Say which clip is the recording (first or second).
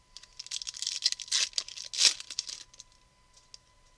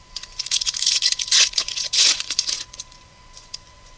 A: first